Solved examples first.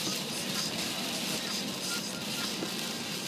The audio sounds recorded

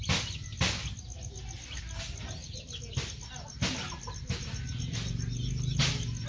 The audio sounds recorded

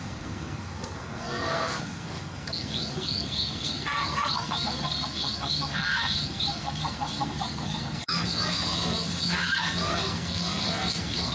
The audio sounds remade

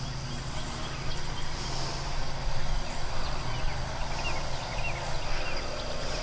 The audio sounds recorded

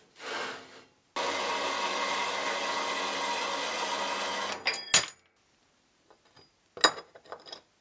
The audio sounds recorded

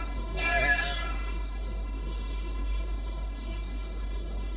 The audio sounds remade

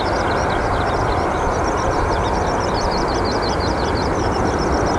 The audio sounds recorded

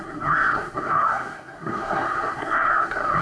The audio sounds remade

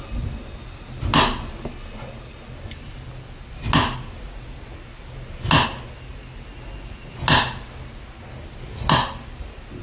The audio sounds recorded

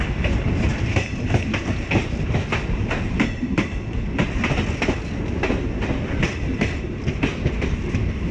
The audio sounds recorded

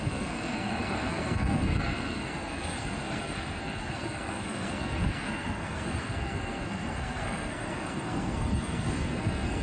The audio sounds remade